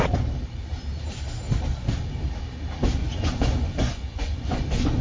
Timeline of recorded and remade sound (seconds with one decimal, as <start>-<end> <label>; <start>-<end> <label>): 0.0-3.0 recorded; 3.0-4.6 remade; 4.6-5.0 recorded